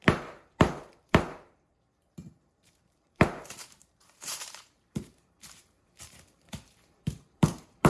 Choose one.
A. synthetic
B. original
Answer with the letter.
A